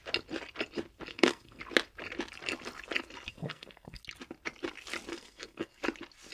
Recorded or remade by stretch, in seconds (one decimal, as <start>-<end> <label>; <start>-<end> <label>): 0.0-1.1 recorded; 1.1-1.6 remade; 1.6-3.3 recorded; 3.3-4.0 remade; 4.0-5.1 recorded; 5.1-5.8 remade; 5.8-6.3 recorded